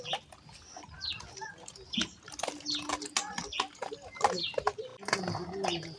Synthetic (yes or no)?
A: no